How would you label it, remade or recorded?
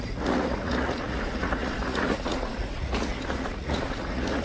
remade